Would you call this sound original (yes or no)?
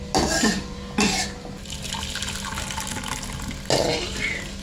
yes